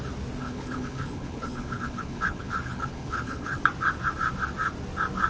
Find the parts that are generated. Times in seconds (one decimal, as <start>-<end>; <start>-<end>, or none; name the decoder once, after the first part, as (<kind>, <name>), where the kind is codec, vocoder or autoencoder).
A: 0.4-3.6 (codec, HILCodec)